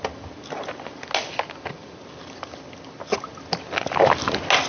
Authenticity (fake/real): real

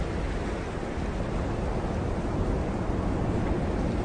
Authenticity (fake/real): real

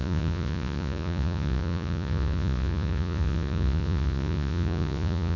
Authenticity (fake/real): fake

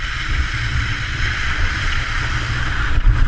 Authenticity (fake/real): fake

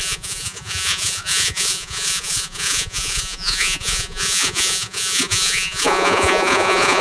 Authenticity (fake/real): fake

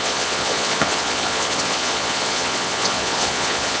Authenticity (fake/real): fake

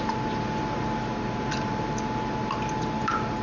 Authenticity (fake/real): real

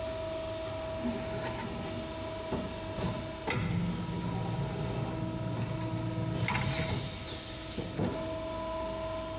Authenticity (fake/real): real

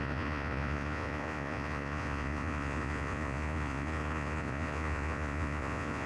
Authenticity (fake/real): fake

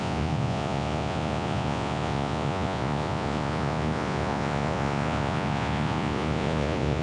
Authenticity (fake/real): fake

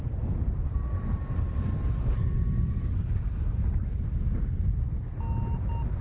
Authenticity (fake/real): real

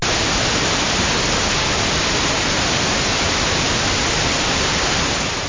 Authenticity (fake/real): real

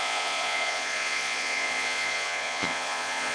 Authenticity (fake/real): fake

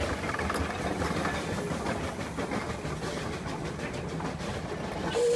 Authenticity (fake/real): real